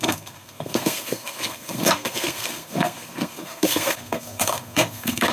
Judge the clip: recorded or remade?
remade